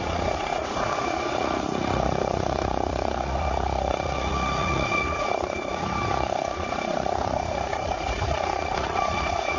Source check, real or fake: fake